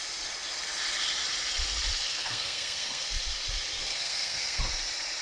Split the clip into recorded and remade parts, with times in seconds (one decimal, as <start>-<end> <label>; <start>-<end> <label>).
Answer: 0.0-2.1 recorded; 2.1-3.2 remade; 3.2-3.9 recorded; 3.9-4.6 remade; 4.6-5.2 recorded